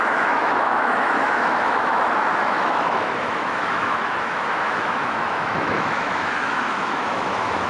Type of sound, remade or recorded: remade